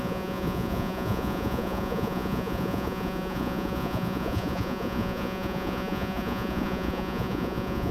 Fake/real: fake